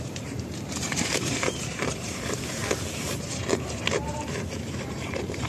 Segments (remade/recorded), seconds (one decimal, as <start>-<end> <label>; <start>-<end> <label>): 0.0-2.6 remade; 2.6-3.2 recorded; 3.2-5.5 remade